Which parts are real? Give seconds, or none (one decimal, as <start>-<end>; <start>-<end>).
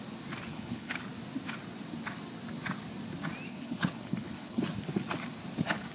0.0-0.5; 1.0-3.5; 4.6-5.9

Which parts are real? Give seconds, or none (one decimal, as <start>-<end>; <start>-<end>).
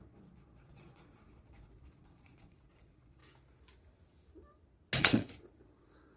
3.2-5.0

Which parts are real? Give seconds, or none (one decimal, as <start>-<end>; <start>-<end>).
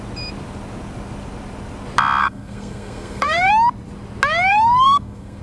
0.0-2.2; 3.5-4.5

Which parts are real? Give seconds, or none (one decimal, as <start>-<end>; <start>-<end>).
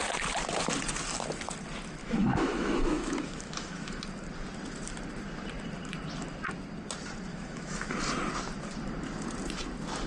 0.0-2.0; 4.0-7.3; 7.9-10.1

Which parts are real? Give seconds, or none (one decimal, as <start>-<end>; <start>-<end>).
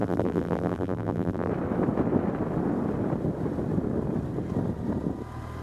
1.5-5.6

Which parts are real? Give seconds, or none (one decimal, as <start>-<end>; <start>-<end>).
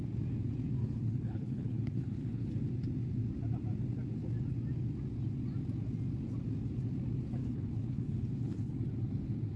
0.0-0.8; 2.5-7.4; 8.7-9.6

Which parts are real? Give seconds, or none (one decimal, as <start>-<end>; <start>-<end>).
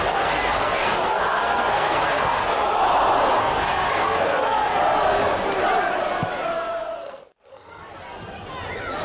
2.8-3.4; 4.8-7.0; 7.8-9.0